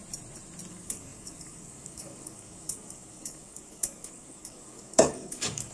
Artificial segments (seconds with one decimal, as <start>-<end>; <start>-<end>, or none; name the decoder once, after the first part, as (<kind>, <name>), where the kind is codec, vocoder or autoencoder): 0.7-5.7 (codec, DAC)